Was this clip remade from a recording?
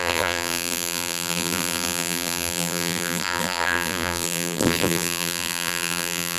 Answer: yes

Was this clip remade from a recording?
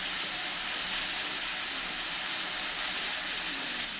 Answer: no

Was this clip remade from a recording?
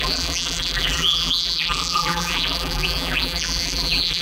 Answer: yes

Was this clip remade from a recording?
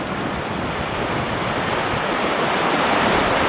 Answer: yes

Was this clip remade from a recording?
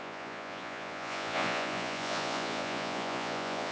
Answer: yes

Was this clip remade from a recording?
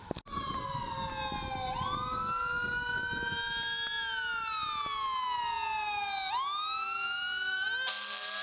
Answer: no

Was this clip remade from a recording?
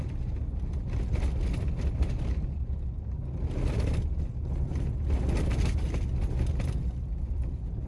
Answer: no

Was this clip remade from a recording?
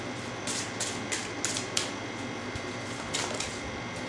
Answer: no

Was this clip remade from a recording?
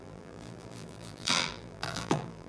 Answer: yes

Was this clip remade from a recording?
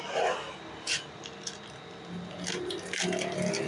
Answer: no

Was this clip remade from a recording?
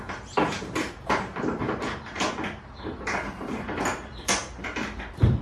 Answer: yes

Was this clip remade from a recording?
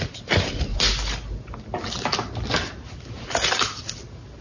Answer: no